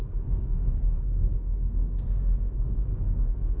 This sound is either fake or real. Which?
fake